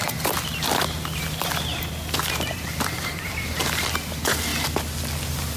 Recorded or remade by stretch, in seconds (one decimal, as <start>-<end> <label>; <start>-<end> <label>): 0.0-3.3 remade; 3.3-5.6 recorded

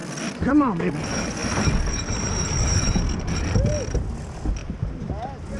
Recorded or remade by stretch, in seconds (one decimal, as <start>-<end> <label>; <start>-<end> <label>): 0.0-0.9 remade; 0.9-1.4 recorded; 1.4-3.3 remade; 3.3-5.6 recorded

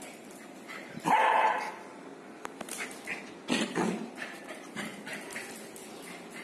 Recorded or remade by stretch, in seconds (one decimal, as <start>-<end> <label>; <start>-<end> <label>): 0.0-2.1 remade; 2.1-3.9 recorded; 3.9-4.9 remade; 4.9-6.4 recorded

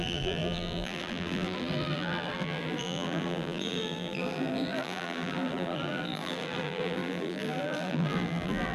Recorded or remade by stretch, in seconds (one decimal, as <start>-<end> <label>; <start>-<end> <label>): 0.0-8.7 remade

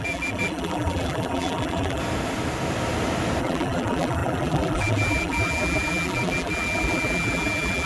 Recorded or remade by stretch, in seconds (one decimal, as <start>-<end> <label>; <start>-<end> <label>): 0.0-2.0 remade; 2.0-3.4 recorded; 3.4-7.9 remade

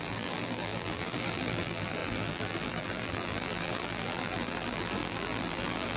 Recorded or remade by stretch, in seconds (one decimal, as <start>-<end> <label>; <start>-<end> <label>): 0.0-6.0 remade